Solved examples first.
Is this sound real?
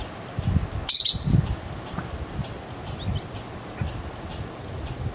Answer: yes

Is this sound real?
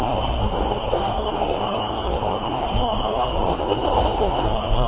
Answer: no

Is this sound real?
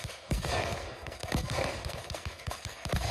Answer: no